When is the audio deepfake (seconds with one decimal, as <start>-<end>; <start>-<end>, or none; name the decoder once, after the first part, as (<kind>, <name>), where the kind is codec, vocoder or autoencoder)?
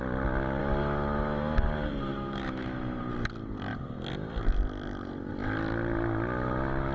0.6-1.6 (autoencoder, DAC-VAE); 2.1-3.0